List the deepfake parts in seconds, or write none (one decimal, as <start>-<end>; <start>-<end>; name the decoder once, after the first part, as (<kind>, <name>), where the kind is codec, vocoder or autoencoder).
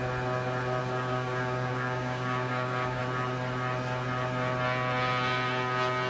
0.8-3.0 (codec, DAC)